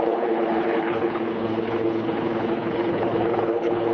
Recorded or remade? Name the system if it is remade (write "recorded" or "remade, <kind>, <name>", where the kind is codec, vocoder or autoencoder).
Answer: remade, codec, HILCodec